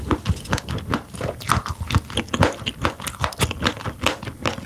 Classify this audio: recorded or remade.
recorded